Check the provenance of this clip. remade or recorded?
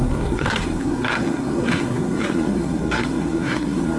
remade